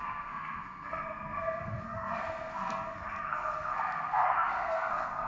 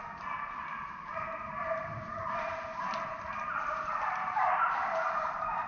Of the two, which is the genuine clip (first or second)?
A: second